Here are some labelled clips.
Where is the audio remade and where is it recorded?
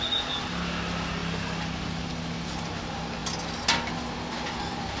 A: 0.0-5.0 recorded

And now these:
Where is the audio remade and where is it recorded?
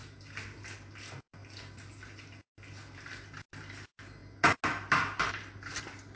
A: 0.0-6.2 recorded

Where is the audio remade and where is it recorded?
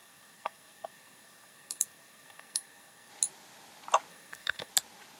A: 0.0-3.1 remade; 3.1-4.1 recorded; 4.1-4.7 remade; 4.7-5.2 recorded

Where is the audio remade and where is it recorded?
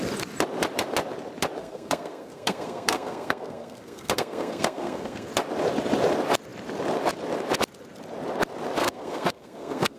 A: 0.0-1.6 recorded; 1.6-5.3 remade; 5.3-8.8 recorded; 8.8-10.0 remade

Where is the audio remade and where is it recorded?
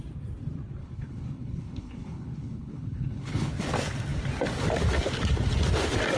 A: 0.0-0.8 recorded; 0.8-3.5 remade; 3.5-6.2 recorded